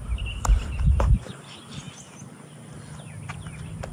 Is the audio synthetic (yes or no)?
no